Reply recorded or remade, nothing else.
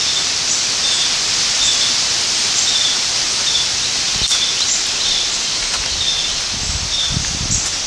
recorded